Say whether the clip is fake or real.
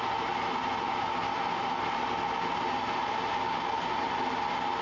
real